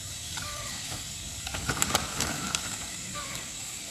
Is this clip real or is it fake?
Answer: fake